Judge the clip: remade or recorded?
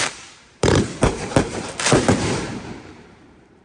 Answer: remade